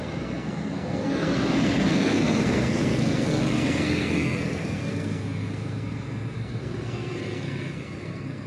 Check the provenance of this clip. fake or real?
fake